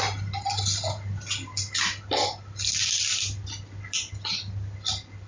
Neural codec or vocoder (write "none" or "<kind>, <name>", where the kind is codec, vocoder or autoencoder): none